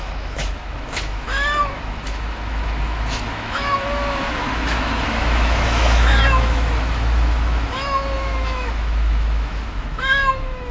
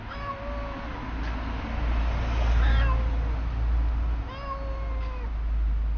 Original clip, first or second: second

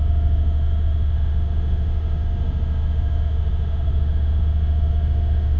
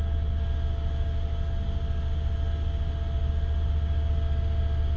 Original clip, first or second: second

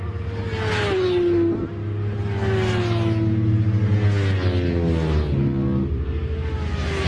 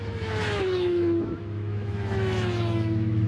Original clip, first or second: first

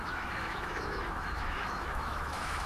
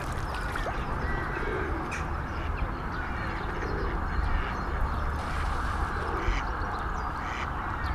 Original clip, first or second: second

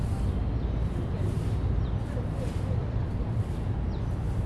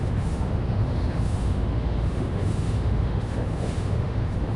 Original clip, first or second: first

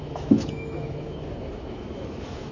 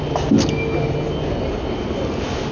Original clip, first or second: second